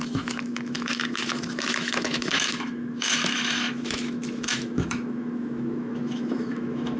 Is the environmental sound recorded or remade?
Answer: remade